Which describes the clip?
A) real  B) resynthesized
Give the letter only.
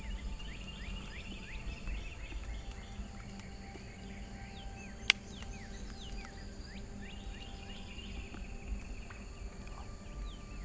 A